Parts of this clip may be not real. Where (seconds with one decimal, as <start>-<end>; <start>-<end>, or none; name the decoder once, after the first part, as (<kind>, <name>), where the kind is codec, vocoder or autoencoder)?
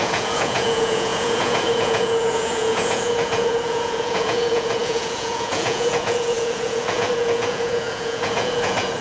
0.0-9.0 (vocoder, Vocos)